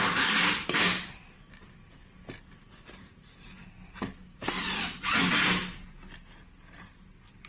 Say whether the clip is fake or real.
real